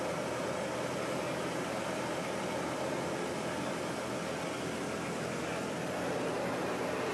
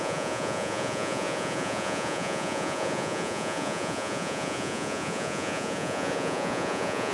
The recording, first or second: first